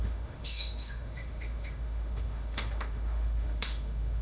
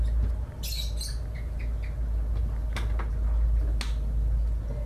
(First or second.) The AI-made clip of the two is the first